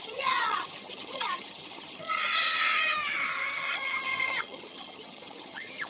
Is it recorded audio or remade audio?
remade